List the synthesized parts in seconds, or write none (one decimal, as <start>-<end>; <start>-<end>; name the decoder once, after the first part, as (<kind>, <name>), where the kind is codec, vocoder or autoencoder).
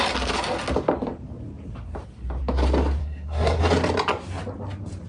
3.0-3.6 (codec, SNAC)